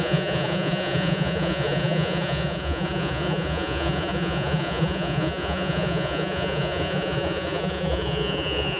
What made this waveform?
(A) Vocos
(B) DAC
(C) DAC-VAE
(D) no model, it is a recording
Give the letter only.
A